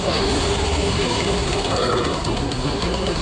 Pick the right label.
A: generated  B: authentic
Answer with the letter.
A